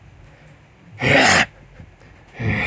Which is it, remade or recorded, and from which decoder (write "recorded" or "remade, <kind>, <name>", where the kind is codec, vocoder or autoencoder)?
recorded